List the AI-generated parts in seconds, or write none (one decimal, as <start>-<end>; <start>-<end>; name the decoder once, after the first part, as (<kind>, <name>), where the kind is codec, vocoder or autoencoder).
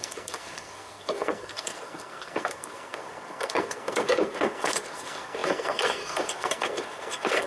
0.0-7.5 (codec, SNAC)